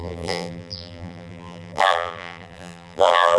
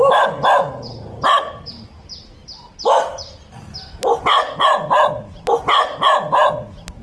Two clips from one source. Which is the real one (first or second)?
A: second